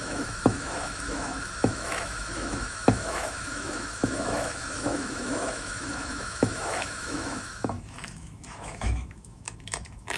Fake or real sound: fake